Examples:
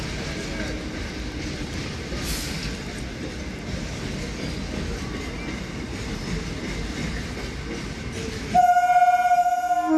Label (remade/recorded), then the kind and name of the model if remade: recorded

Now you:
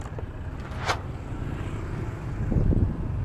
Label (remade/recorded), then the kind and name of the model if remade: recorded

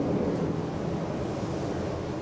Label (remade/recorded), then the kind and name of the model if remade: recorded